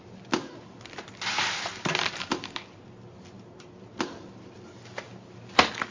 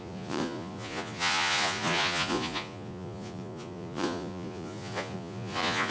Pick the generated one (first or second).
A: second